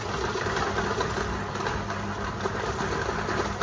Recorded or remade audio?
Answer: recorded